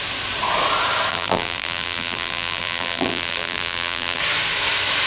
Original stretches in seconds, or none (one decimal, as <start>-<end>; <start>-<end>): 0.0-1.1; 4.2-5.1